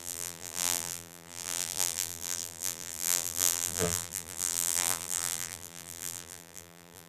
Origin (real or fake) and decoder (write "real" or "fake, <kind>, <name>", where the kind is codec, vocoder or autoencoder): fake, vocoder, BigVGAN v2